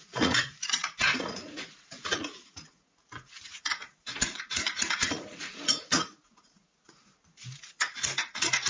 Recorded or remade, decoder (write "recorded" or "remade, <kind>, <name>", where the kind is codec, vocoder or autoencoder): remade, vocoder, Vocos